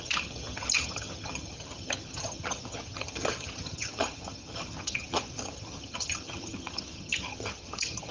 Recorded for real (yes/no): no